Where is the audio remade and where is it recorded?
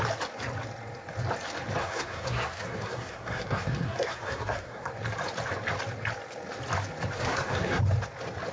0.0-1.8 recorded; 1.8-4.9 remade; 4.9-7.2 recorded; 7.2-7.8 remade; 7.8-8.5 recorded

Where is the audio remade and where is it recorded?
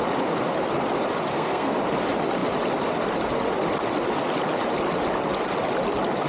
0.0-1.3 recorded; 1.3-1.8 remade; 1.8-6.3 recorded